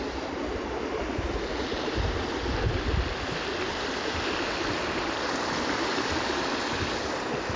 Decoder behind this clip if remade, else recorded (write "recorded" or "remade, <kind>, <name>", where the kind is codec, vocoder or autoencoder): recorded